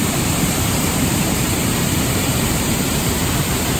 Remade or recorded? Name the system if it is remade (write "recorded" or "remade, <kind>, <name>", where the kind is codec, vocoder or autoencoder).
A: remade, vocoder, BigVGAN v2